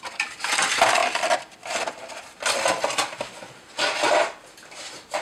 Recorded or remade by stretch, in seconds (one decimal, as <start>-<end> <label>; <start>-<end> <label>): 0.0-5.2 recorded